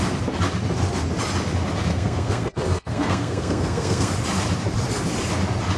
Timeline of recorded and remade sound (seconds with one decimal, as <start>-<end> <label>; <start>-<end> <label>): 0.0-1.9 recorded; 1.9-4.1 remade; 4.1-5.8 recorded